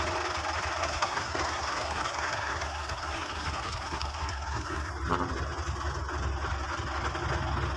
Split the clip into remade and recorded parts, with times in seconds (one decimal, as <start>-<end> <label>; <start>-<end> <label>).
0.0-0.8 recorded; 0.8-4.9 remade; 4.9-7.8 recorded